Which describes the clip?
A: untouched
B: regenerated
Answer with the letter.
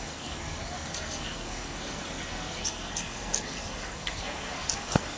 B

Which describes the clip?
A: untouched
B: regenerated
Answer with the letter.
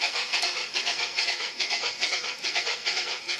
B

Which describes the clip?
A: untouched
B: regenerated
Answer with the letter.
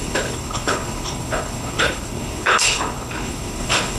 B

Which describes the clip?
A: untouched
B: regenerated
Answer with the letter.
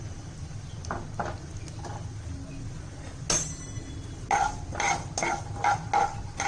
A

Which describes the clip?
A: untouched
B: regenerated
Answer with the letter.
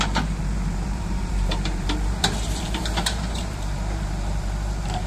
B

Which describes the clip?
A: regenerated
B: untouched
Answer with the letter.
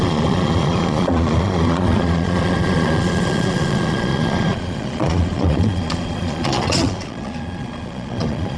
A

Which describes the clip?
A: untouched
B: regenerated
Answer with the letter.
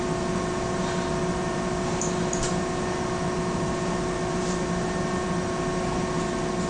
B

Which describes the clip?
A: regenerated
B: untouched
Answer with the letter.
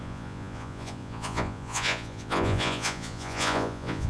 A